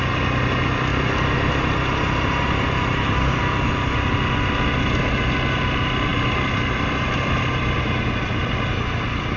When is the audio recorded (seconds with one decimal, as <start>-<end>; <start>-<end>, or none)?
0.0-0.9; 3.4-6.1; 7.4-9.4